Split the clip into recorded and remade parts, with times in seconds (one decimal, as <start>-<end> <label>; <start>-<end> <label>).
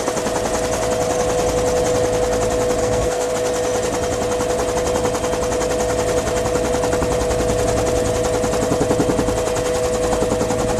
0.0-2.8 recorded; 2.8-3.3 remade; 3.3-10.8 recorded